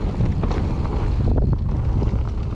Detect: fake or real real